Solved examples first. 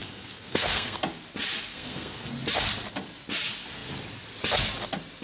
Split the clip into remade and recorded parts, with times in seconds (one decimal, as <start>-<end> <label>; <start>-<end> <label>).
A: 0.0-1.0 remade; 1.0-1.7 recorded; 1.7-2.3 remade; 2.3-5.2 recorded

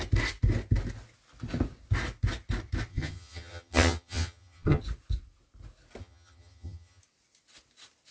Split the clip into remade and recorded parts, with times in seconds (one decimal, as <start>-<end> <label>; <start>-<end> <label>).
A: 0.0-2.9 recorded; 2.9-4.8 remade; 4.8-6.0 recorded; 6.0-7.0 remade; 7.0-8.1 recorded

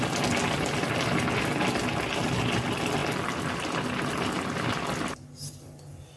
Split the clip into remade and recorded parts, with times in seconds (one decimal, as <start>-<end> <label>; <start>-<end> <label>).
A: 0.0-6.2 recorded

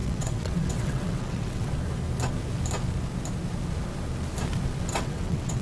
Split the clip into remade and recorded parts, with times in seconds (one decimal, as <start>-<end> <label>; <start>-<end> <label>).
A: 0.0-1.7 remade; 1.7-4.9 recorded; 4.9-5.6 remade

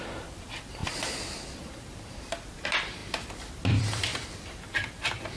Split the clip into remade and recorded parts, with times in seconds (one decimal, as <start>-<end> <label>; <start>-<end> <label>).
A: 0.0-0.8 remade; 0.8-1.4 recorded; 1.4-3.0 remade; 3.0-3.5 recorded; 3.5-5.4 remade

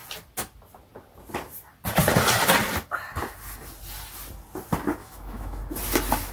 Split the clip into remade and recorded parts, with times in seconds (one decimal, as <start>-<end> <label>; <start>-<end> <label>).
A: 0.0-5.0 recorded; 5.0-5.6 remade; 5.6-6.3 recorded

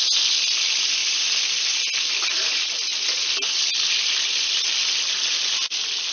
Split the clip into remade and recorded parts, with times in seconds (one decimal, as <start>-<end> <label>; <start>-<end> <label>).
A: 0.0-1.0 recorded; 1.0-1.6 remade; 1.6-2.9 recorded; 2.9-5.1 remade; 5.1-6.1 recorded

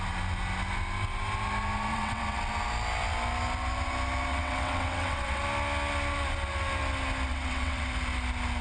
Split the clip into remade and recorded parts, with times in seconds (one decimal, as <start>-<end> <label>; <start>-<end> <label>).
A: 0.0-1.9 recorded; 1.9-2.4 remade; 2.4-4.3 recorded; 4.3-5.4 remade; 5.4-7.3 recorded; 7.3-7.9 remade; 7.9-8.6 recorded